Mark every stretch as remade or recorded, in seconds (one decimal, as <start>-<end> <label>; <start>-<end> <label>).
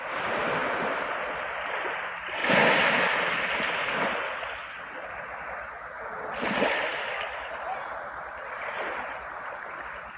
0.0-10.2 recorded